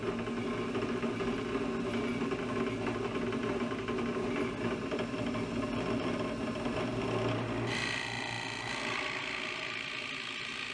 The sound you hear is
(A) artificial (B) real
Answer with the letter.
B